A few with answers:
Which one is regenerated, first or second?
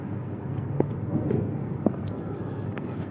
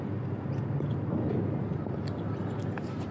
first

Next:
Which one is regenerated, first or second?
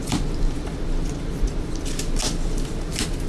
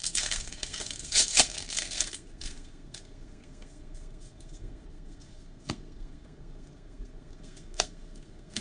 second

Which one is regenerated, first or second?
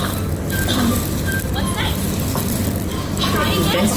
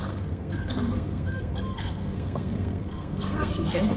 second